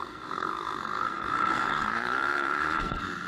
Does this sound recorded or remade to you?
remade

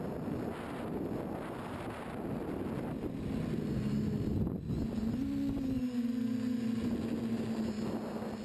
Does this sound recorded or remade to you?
recorded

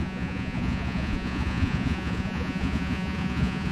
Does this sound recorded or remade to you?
remade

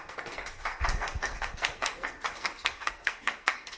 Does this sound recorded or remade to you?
remade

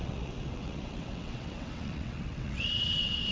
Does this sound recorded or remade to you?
remade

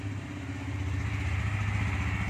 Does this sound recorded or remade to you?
recorded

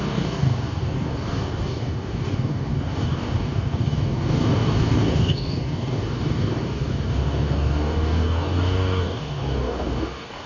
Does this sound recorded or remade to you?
remade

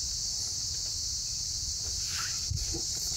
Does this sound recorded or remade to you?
recorded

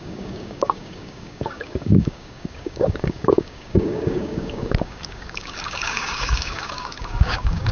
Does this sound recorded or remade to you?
remade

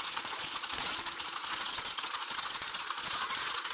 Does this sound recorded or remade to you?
remade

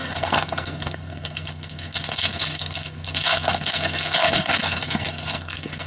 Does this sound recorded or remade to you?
remade